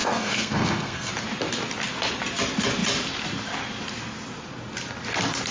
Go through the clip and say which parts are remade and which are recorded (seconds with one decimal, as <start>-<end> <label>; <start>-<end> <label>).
0.0-1.1 remade; 1.1-5.5 recorded